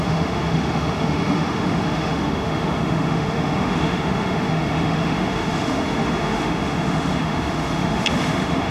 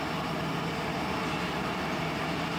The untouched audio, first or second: second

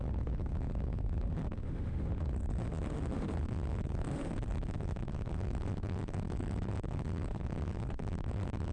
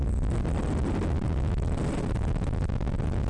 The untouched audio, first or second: second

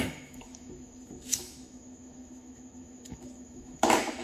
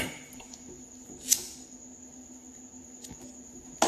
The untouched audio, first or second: second